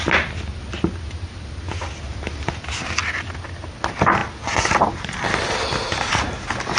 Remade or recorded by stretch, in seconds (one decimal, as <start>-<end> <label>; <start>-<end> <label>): 0.0-6.8 recorded